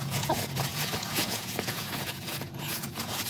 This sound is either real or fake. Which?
fake